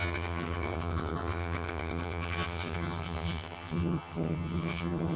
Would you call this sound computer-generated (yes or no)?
yes